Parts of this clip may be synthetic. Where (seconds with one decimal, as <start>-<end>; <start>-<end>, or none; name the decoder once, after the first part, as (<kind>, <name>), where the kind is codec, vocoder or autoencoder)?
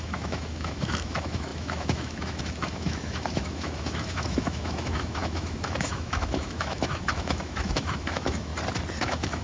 0.0-8.5 (autoencoder, DAC-VAE); 9.0-9.4